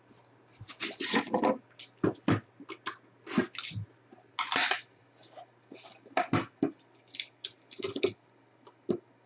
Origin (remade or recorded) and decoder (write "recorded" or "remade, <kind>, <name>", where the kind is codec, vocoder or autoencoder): recorded